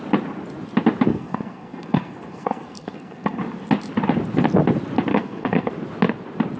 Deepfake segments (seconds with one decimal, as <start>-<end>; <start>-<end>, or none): 1.1-3.4; 5.1-5.7